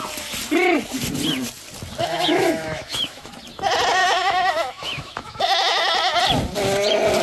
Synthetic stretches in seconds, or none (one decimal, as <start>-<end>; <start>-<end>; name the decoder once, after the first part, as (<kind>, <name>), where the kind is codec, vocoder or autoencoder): 2.0-3.3 (autoencoder, DAC-VAE); 4.0-6.2